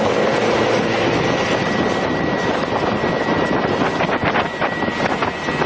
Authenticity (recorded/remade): recorded